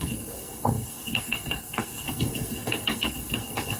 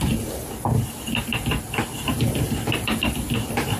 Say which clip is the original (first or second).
second